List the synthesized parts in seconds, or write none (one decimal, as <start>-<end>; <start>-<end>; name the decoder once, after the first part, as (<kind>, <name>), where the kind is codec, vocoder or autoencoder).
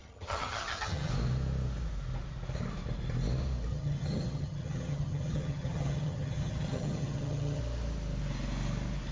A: 0.0-1.1 (vocoder, HiFi-GAN); 3.7-7.6